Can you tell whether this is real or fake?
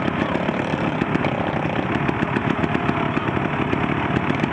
real